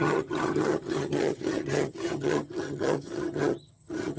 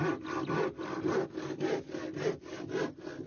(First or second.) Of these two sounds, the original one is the second